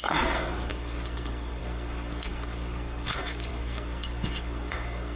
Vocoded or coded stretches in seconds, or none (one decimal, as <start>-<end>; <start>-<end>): 0.0-5.2